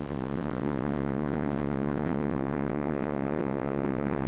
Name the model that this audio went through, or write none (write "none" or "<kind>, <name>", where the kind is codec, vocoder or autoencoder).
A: vocoder, WaveNeXt